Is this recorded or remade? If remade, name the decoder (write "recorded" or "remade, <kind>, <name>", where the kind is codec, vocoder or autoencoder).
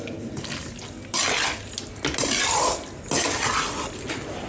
recorded